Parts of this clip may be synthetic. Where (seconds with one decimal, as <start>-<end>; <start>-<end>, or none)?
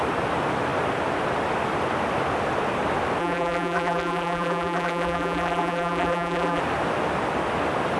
3.2-6.6